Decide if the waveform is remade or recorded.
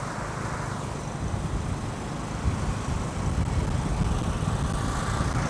recorded